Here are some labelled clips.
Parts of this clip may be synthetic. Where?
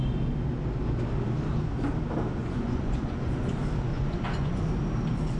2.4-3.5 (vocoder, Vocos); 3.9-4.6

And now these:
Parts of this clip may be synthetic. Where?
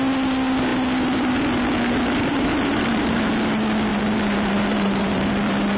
2.3-3.3 (vocoder, BigVGAN v2); 3.9-5.3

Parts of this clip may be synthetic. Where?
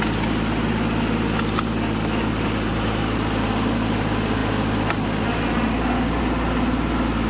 none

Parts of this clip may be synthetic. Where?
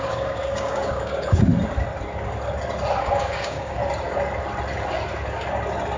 0.0-1.5 (codec, DAC); 3.0-3.8